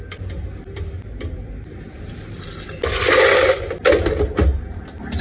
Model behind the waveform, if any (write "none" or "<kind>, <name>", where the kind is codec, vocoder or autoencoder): none